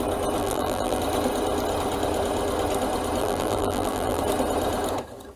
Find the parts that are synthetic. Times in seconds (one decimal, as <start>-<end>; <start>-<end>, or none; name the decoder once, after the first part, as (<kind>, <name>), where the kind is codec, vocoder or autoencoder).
0.4-1.0 (vocoder, BigVGAN v2); 3.2-4.2